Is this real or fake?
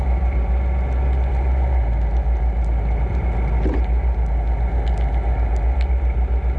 real